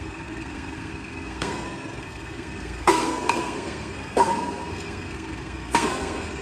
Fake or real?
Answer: fake